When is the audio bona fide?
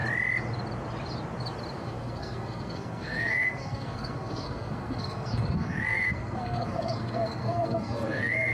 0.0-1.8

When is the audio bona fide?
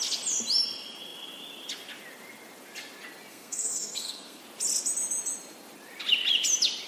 0.0-3.3; 4.4-6.9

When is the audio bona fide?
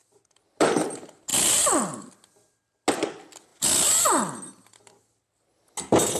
0.0-6.2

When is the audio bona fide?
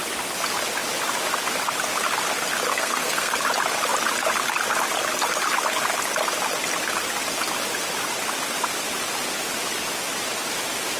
0.0-2.7; 3.3-11.0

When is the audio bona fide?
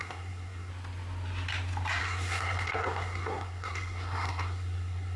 0.7-2.0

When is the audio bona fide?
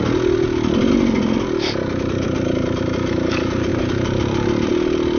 0.0-5.2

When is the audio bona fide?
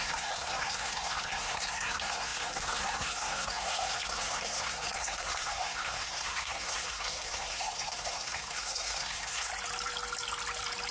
9.5-10.9